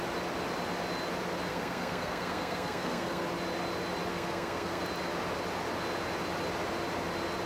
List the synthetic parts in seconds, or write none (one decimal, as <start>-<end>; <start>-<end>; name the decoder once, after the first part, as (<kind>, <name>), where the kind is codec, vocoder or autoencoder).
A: 1.5-3.2 (codec, SNAC); 4.1-4.8